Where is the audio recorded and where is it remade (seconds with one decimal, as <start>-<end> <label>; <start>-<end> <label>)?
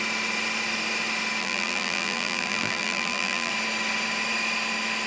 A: 0.0-1.4 recorded; 1.4-3.5 remade; 3.5-5.1 recorded